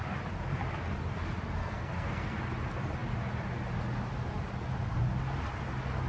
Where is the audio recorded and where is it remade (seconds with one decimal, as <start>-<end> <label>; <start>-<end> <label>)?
0.0-1.6 recorded; 1.6-2.4 remade; 2.4-6.1 recorded

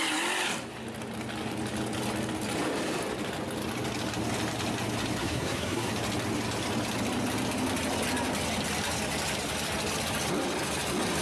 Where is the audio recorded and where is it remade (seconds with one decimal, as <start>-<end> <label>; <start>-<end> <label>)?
0.0-5.2 recorded; 5.2-5.9 remade; 5.9-11.2 recorded

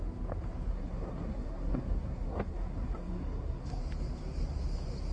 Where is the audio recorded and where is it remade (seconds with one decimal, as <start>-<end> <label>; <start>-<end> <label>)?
0.0-0.7 recorded; 0.7-3.8 remade; 3.8-5.1 recorded

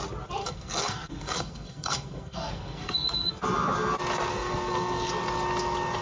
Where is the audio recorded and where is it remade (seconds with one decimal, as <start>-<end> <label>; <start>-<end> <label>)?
0.0-0.4 recorded; 0.4-3.3 remade; 3.3-4.3 recorded; 4.3-5.1 remade; 5.1-6.0 recorded